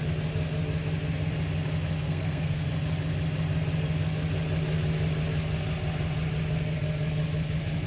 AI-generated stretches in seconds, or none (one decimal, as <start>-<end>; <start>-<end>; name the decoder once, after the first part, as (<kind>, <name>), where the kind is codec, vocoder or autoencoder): 2.0-2.7 (codec, SNAC)